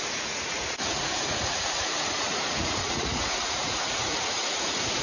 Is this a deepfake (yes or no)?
yes